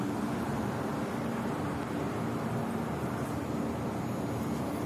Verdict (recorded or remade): recorded